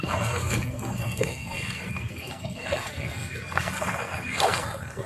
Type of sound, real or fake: fake